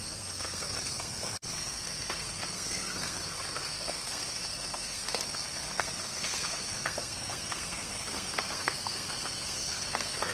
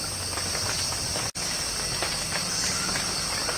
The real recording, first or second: second